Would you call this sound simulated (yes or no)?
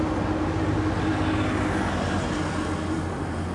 no